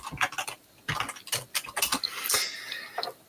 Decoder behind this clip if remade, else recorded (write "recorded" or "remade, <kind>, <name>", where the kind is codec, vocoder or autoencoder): recorded